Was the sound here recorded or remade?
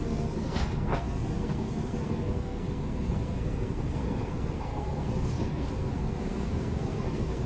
remade